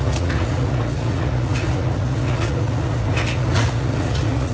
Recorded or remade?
remade